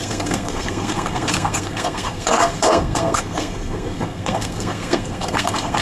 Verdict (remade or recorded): remade